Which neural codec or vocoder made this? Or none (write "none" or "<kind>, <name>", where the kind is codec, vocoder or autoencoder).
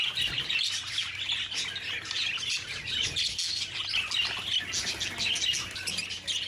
none